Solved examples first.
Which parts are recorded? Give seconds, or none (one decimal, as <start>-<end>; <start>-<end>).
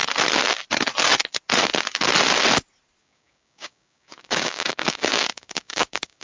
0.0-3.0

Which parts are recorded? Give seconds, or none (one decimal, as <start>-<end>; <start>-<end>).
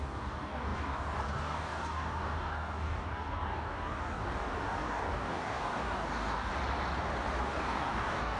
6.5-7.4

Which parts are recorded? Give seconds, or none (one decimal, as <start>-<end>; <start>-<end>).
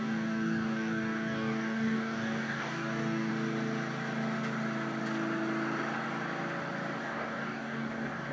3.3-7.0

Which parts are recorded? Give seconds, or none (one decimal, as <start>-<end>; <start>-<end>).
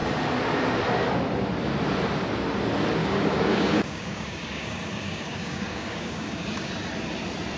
0.0-3.0; 6.7-7.6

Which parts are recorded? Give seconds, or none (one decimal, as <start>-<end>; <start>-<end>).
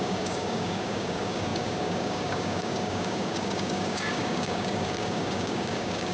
none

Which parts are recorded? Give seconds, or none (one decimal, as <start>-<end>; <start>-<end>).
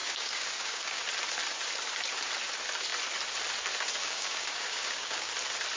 1.0-4.0; 5.3-5.8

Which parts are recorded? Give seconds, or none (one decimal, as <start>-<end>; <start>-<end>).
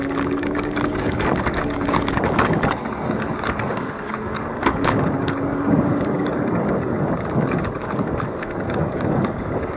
none